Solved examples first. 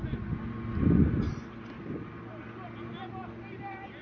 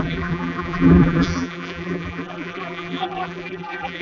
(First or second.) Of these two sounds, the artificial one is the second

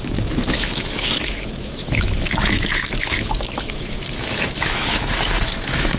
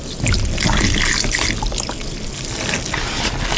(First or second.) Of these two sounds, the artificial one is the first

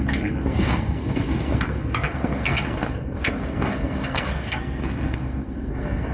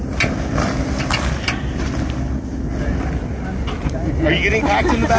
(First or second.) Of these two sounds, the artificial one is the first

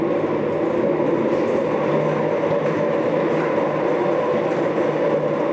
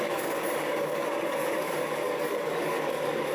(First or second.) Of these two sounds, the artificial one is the second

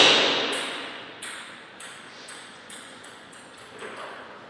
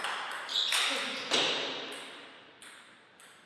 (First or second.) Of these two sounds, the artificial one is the first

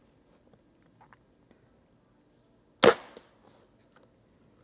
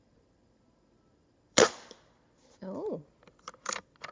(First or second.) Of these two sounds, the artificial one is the second